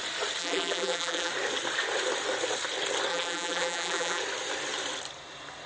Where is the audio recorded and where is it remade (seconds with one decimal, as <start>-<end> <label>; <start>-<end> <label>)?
0.0-0.4 recorded; 0.4-1.3 remade; 1.3-3.1 recorded; 3.1-4.2 remade; 4.2-5.7 recorded